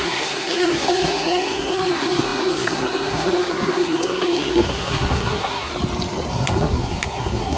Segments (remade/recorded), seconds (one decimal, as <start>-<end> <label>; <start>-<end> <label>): 0.0-5.7 remade; 5.7-6.3 recorded; 6.3-7.6 remade